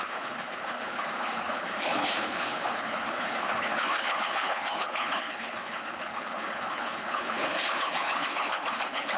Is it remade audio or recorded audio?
remade